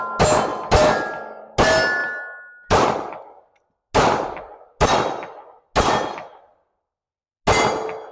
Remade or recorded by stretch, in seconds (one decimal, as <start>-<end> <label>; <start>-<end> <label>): 0.0-8.1 recorded